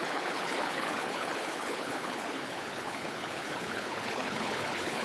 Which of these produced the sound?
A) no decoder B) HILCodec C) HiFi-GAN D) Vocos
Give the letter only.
B